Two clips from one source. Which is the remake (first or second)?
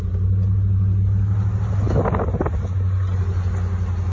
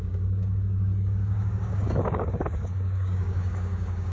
second